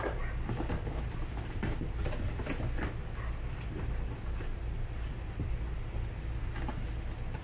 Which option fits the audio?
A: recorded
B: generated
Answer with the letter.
A